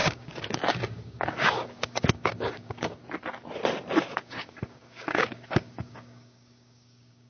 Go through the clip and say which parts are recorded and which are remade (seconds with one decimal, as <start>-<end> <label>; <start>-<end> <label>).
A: 0.0-3.0 remade; 3.0-4.0 recorded; 4.0-7.3 remade